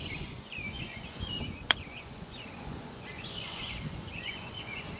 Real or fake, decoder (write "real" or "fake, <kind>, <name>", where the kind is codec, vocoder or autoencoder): fake, vocoder, Vocos